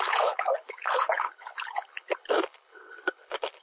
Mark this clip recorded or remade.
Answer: remade